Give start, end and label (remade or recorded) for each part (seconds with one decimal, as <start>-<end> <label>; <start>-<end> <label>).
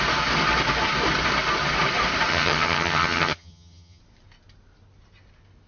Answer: 0.0-2.3 recorded; 2.3-4.0 remade; 4.0-5.7 recorded